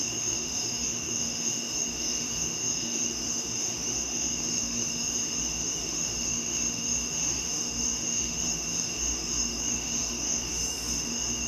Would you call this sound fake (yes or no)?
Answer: yes